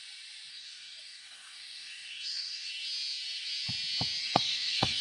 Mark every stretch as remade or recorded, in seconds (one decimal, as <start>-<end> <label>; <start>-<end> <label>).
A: 0.0-0.5 recorded; 0.5-2.7 remade; 2.7-4.2 recorded; 4.2-5.0 remade